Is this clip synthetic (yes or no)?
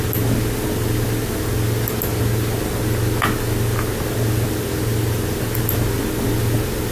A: no